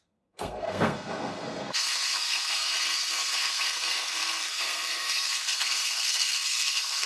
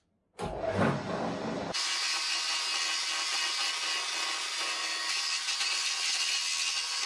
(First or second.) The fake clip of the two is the first